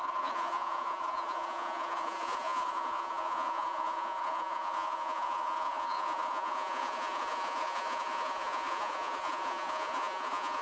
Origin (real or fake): fake